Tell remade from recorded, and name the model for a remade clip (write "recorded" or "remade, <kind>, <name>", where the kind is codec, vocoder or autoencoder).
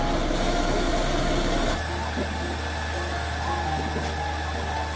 recorded